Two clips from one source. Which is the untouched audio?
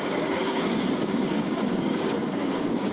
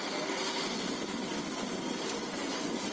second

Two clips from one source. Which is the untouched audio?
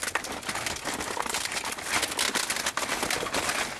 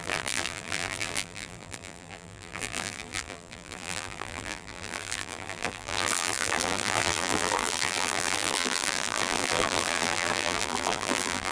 first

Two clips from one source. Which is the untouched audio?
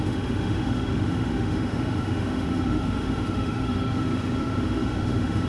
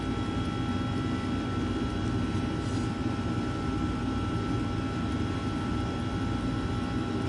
second